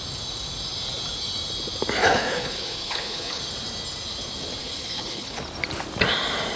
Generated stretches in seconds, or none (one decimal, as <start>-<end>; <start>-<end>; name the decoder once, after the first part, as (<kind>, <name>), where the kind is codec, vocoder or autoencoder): 2.0-3.4 (codec, HILCodec); 4.6-5.4